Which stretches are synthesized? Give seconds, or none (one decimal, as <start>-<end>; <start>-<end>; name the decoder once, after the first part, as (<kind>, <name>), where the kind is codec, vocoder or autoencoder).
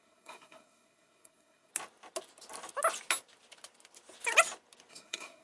0.0-1.7 (codec, SNAC); 4.9-5.4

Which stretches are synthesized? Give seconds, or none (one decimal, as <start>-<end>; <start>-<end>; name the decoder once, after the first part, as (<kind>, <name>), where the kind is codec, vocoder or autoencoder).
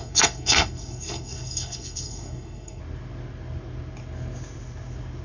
0.0-2.8 (codec, SNAC)